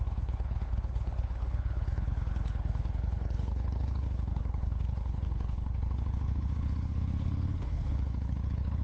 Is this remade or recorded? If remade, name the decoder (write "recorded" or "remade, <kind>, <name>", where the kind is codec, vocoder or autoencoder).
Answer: remade, codec, HILCodec